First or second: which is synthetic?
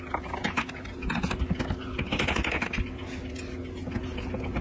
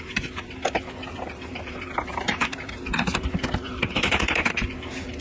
second